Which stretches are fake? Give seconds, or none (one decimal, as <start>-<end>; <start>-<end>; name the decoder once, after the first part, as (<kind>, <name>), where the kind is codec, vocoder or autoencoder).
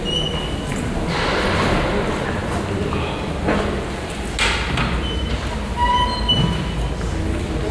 none